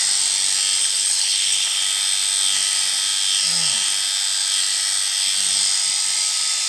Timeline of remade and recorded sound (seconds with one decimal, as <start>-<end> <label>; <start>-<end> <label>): 0.0-0.8 recorded; 0.8-1.8 remade; 1.8-6.7 recorded

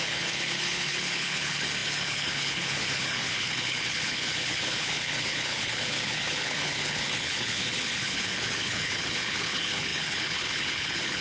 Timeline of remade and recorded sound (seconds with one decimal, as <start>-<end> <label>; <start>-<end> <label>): 0.0-11.2 remade

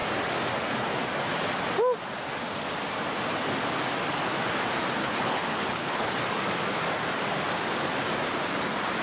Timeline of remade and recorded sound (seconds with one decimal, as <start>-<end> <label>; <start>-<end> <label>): 0.0-5.0 recorded; 5.0-6.1 remade; 6.1-9.0 recorded